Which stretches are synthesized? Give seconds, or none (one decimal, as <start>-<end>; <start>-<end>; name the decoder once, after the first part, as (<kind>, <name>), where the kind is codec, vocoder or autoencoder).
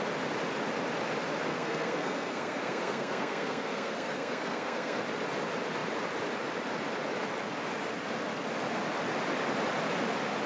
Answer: 1.5-5.0 (codec, SNAC)